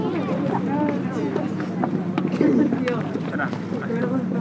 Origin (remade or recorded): recorded